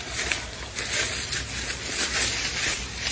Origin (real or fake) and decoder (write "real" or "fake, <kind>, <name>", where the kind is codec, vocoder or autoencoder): real